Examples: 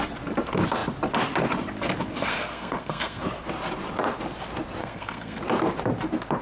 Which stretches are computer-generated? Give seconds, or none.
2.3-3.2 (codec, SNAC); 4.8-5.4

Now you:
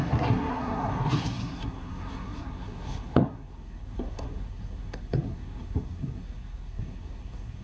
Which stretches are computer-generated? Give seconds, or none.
0.0-7.6 (codec, SNAC)

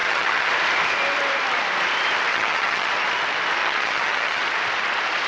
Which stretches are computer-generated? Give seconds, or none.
0.0-0.5 (vocoder, HiFi-GAN); 2.3-2.9; 3.6-4.4

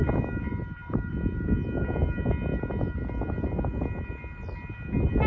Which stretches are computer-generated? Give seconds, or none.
none